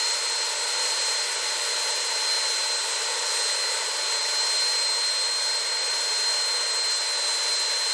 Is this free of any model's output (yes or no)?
yes